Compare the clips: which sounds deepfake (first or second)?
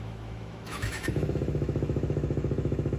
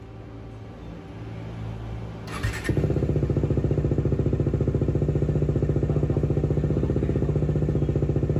first